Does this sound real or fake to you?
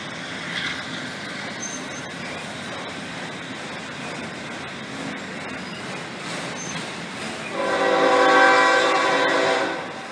real